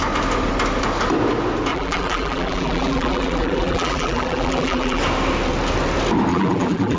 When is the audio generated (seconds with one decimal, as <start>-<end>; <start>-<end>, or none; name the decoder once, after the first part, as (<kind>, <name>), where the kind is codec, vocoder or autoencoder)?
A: 1.7-5.0 (vocoder, BigVGAN v2); 6.3-7.0